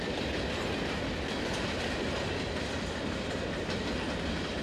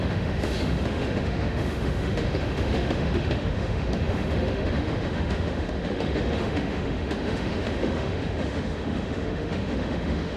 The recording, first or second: first